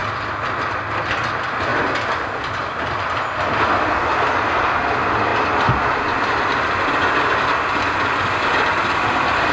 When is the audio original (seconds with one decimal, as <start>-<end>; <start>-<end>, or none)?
0.0-9.5

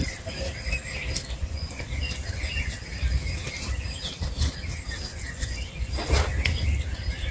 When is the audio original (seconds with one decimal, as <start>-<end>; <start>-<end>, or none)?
0.0-1.4; 1.9-5.1; 5.9-7.3